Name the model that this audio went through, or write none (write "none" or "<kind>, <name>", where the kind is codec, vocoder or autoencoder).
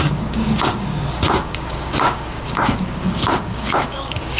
codec, DAC